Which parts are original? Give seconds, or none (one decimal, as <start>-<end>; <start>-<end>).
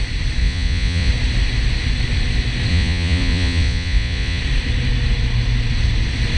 0.0-0.4; 1.1-2.7; 4.4-6.4